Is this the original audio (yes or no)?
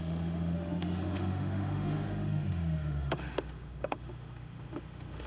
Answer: no